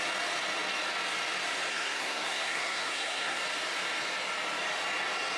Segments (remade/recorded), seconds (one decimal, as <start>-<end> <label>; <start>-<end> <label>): 0.0-1.7 recorded; 1.7-3.4 remade; 3.4-5.4 recorded